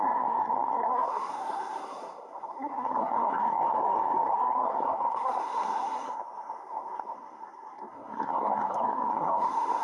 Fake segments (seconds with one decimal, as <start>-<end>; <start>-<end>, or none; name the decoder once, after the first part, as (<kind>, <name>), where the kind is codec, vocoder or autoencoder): 0.0-9.8 (codec, SNAC)